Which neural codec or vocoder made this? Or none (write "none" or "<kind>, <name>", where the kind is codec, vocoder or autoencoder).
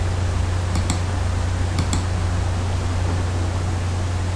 none